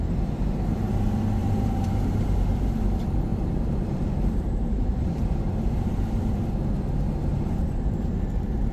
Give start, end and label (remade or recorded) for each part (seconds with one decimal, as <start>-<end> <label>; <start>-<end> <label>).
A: 0.0-1.4 recorded; 1.4-2.3 remade; 2.3-3.3 recorded; 3.3-6.5 remade; 6.5-8.7 recorded